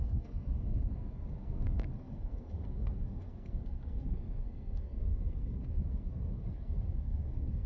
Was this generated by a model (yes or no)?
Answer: yes